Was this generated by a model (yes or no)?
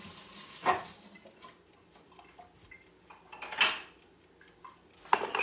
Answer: no